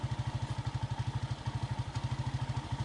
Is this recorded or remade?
recorded